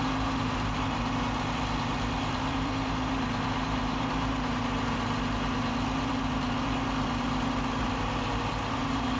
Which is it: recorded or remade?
remade